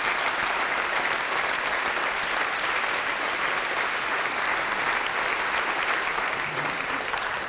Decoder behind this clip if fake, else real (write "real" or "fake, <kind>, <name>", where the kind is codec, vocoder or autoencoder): real